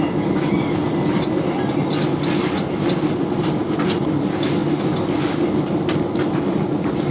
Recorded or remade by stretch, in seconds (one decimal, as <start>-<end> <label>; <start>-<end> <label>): 0.0-7.1 recorded